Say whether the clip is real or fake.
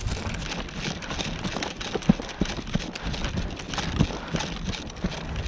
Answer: real